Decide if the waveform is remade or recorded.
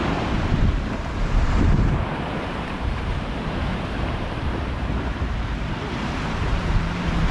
remade